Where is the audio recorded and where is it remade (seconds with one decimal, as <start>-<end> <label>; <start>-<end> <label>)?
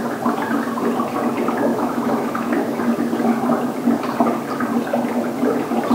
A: 0.0-1.7 recorded; 1.7-2.8 remade; 2.8-5.9 recorded